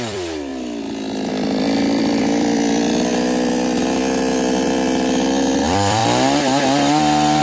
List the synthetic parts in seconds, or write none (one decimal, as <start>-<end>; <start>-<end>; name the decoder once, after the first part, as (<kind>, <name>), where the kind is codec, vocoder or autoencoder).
0.0-0.5 (vocoder, BigVGAN v2); 1.3-3.1; 4.0-6.0

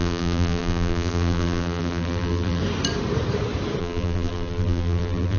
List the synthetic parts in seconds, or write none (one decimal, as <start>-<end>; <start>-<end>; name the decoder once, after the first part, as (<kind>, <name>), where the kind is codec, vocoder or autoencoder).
0.0-2.6 (vocoder, BigVGAN v2); 3.8-5.4

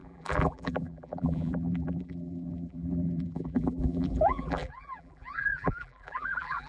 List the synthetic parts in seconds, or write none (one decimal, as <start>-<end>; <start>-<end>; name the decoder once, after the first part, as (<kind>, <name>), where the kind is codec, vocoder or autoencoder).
0.0-6.7 (vocoder, BigVGAN v2)

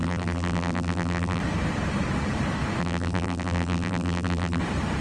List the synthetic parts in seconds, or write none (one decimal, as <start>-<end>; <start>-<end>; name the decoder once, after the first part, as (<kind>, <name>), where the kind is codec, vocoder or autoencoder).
0.0-1.4 (vocoder, BigVGAN v2); 2.8-4.6

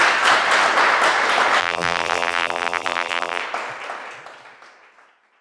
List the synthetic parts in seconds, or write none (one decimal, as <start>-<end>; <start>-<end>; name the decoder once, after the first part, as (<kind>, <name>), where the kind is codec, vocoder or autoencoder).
1.6-3.4 (vocoder, BigVGAN v2)

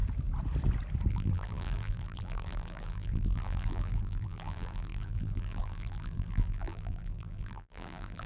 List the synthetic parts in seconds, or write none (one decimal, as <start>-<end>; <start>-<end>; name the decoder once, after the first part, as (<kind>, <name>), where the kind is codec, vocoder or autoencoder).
1.1-8.3 (vocoder, BigVGAN v2)